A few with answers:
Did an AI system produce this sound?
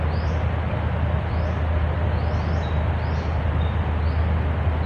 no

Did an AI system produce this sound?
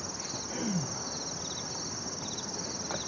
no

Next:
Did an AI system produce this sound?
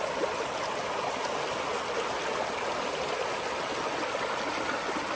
no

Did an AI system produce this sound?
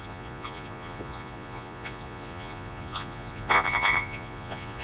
yes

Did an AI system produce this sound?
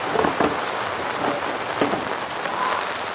no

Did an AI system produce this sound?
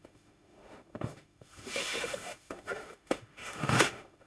yes